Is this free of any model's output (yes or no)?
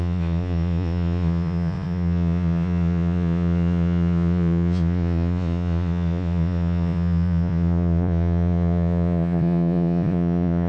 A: no